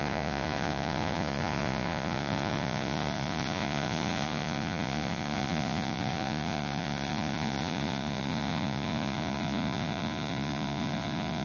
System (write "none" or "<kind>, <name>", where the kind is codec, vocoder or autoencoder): vocoder, Vocos